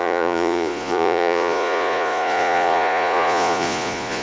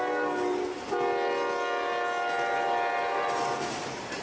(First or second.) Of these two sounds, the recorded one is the second